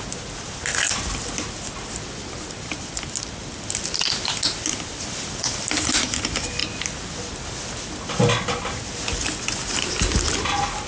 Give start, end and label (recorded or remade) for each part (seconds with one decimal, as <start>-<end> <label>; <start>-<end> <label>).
0.0-10.9 recorded